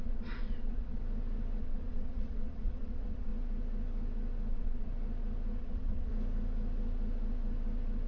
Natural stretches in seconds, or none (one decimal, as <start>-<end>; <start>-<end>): 1.0-1.6; 3.3-4.5; 4.9-5.6; 6.1-8.1